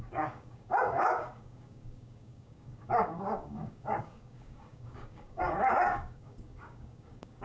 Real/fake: fake